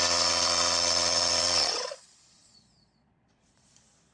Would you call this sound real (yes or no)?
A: no